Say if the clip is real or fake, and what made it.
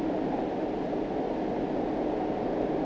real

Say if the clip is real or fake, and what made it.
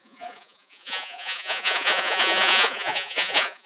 fake, vocoder, Vocos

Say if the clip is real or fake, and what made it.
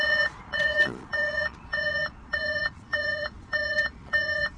fake, vocoder, Vocos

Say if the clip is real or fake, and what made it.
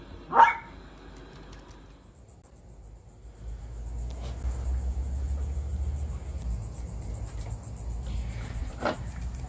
real